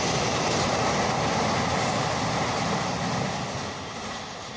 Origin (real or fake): real